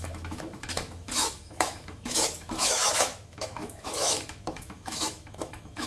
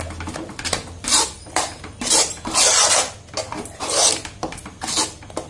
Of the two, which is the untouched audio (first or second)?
second